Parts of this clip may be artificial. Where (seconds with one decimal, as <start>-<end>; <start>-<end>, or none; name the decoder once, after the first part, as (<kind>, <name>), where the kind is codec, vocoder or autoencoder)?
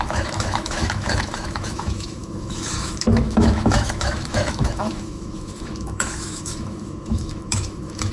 0.0-8.1 (autoencoder, DAC-VAE)